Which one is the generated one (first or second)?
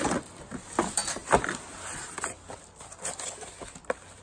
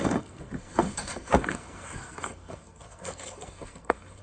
second